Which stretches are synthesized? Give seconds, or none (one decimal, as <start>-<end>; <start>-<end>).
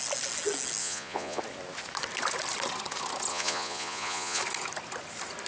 0.8-1.4; 3.3-4.4